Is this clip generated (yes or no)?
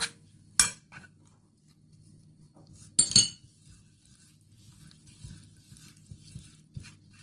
no